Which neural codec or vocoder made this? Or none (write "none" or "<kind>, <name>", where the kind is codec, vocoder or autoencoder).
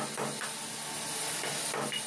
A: none